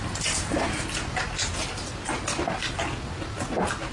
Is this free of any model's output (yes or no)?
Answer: yes